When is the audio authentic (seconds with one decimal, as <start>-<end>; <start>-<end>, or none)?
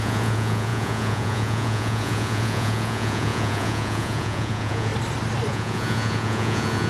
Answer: 4.9-5.5